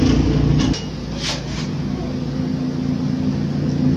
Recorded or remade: recorded